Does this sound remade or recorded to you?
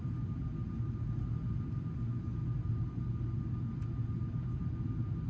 recorded